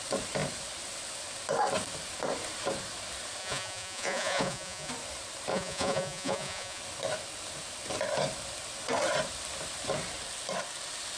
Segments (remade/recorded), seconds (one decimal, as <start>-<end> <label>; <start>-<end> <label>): 0.0-3.4 recorded; 3.4-4.9 remade; 4.9-5.5 recorded; 5.5-6.8 remade; 6.8-11.2 recorded